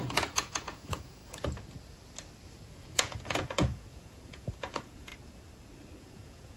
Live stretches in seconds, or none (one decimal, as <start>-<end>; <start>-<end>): 1.2-2.7; 5.1-6.0

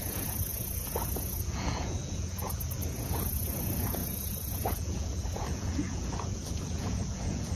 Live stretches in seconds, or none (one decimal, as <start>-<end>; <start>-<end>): none